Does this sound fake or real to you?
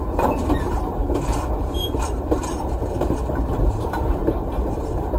fake